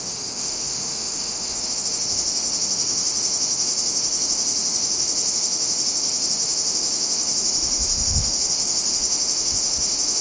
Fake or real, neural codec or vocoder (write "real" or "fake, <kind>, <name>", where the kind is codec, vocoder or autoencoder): fake, autoencoder, DAC-VAE